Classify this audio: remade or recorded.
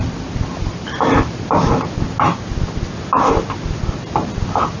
recorded